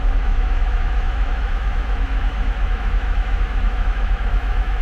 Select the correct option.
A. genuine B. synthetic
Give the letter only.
B